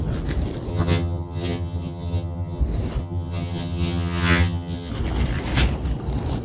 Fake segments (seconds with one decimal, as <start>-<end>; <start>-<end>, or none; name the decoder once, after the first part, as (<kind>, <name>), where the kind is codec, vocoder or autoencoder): 0.7-2.6 (vocoder, HiFi-GAN); 3.0-4.9